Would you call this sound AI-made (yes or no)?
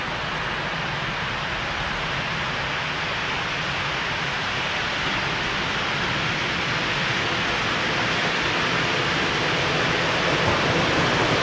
no